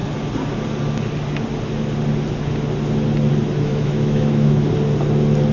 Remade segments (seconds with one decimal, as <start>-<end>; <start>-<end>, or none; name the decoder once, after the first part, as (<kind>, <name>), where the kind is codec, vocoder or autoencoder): 3.7-4.7 (autoencoder, DAC-VAE)